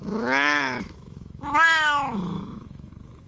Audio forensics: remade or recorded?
remade